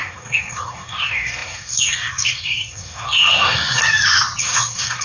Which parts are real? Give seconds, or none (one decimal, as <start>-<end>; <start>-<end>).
3.8-4.4